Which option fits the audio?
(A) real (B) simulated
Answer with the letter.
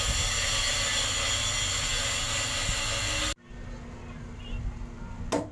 A